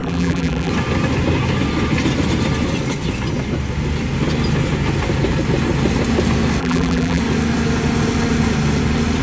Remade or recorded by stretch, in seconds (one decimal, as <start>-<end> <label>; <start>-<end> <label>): 0.0-0.7 remade; 0.7-6.6 recorded; 6.6-7.2 remade; 7.2-9.2 recorded

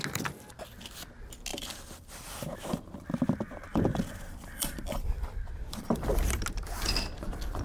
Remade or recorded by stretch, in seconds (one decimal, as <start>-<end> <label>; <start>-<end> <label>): 0.0-1.5 recorded; 1.5-2.9 remade; 2.9-3.7 recorded; 3.7-6.4 remade; 6.4-7.6 recorded

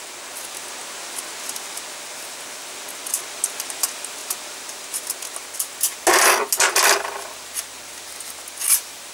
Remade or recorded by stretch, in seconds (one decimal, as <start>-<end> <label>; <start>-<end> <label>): 0.0-9.1 recorded

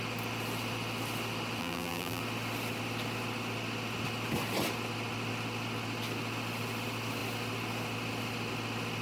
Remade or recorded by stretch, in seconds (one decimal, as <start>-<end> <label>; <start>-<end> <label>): 0.0-1.6 recorded; 1.6-2.2 remade; 2.2-9.0 recorded

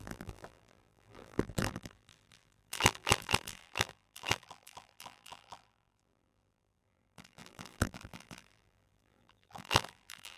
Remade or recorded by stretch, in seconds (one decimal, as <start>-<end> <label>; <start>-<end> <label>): 0.0-10.4 remade

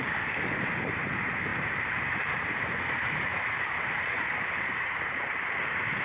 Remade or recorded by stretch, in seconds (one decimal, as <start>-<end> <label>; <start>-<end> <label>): 0.0-1.5 recorded; 1.5-5.1 remade; 5.1-6.0 recorded

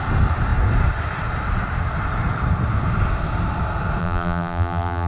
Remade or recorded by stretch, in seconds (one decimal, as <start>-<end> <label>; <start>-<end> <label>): 0.0-4.0 recorded; 4.0-5.1 remade